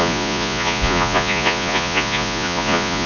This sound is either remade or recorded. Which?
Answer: remade